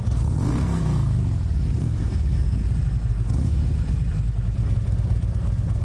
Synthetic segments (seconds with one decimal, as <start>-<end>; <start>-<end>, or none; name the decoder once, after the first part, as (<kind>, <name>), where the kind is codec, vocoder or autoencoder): 0.0-1.2 (codec, SNAC); 1.8-2.6; 3.1-3.6; 4.6-5.8